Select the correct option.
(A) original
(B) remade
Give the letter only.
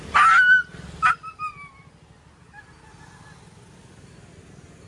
A